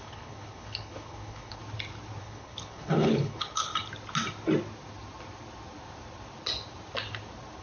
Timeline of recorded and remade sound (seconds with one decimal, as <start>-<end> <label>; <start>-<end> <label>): 0.0-1.6 remade; 1.6-2.2 recorded; 2.2-3.7 remade; 3.7-7.6 recorded